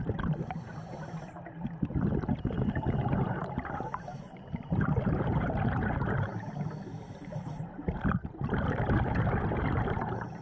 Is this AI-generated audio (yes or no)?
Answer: yes